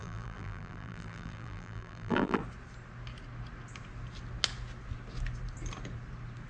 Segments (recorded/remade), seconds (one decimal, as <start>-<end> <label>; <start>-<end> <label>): 0.0-2.4 remade; 2.4-6.5 recorded